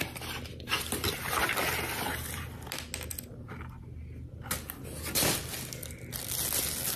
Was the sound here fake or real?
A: real